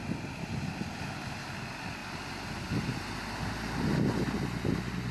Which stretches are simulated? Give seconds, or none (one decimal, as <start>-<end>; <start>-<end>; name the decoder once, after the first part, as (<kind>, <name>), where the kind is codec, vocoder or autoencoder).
none